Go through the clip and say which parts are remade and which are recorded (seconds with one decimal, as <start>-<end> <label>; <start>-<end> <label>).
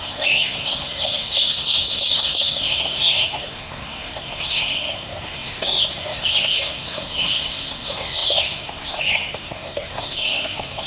0.0-10.9 remade